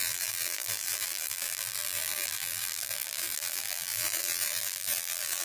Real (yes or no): no